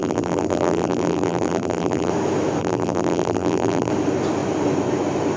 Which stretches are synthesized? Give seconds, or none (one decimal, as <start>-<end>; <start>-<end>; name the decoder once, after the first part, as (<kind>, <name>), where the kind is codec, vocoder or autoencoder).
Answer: 0.0-2.1 (vocoder, BigVGAN v2); 2.6-3.9